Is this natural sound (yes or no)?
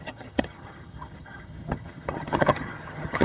no